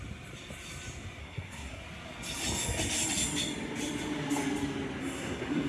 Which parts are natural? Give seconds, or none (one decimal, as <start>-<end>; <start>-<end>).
0.0-1.2; 1.8-5.0